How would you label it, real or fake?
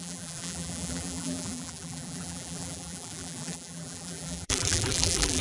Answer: fake